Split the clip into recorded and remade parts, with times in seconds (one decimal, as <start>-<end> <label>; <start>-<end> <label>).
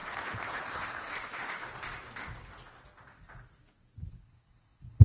0.0-0.6 recorded; 0.6-1.1 remade; 1.1-4.1 recorded; 4.1-5.0 remade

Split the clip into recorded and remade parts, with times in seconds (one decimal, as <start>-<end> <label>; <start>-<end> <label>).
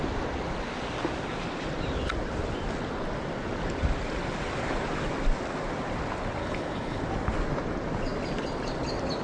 0.0-6.4 recorded; 6.4-7.0 remade; 7.0-9.2 recorded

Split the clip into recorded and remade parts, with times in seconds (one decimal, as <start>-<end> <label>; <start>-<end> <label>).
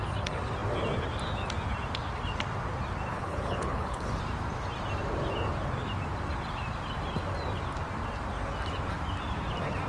0.0-3.1 recorded; 3.1-4.2 remade; 4.2-9.9 recorded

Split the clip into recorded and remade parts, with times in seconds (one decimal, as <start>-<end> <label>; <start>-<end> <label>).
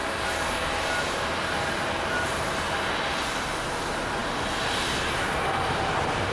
0.0-6.3 recorded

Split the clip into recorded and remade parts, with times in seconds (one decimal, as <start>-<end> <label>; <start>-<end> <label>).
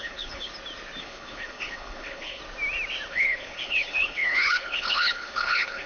0.0-0.5 remade; 0.5-1.0 recorded; 1.0-2.4 remade; 2.4-3.1 recorded; 3.1-5.9 remade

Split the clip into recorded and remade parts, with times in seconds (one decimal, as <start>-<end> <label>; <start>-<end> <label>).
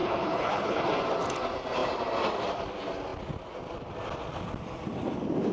0.0-0.8 remade; 0.8-5.5 recorded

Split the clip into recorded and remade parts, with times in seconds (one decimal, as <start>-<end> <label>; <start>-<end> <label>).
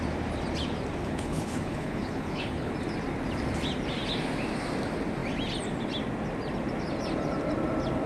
0.0-1.0 recorded; 1.0-2.7 remade; 2.7-8.1 recorded